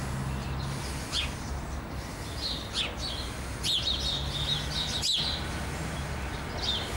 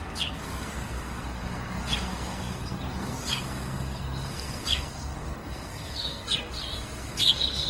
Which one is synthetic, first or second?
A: second